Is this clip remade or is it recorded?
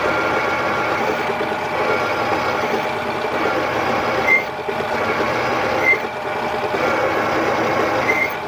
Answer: recorded